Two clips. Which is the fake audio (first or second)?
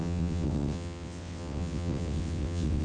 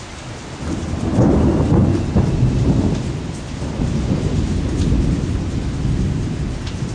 first